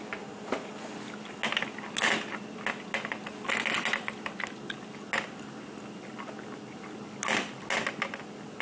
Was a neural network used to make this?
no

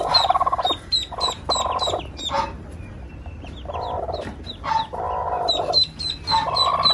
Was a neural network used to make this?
no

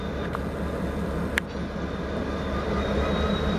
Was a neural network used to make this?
no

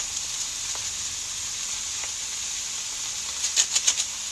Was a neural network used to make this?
no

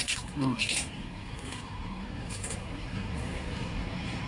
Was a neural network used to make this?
yes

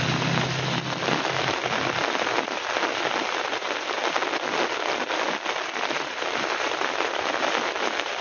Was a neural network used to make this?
no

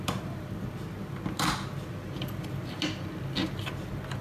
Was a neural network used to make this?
no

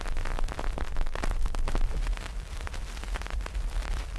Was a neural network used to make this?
yes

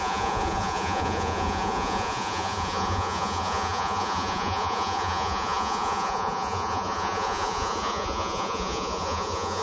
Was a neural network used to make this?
yes